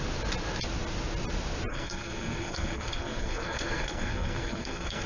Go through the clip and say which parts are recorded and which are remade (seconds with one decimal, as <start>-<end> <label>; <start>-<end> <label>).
0.0-1.7 recorded; 1.7-5.1 remade